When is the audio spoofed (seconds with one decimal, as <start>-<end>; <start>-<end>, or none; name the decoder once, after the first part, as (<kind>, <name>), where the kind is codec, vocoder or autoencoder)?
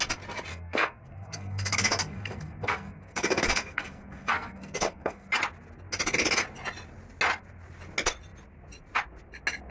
0.5-5.3 (codec, SNAC)